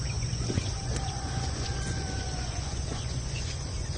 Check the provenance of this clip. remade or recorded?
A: remade